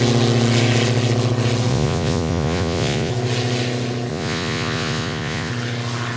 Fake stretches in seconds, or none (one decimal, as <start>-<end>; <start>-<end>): 1.7-3.1; 4.1-5.5